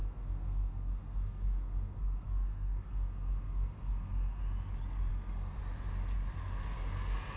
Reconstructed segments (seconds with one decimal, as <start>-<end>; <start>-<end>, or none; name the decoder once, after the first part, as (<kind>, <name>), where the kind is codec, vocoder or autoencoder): 0.0-4.4 (codec, SNAC); 5.1-5.6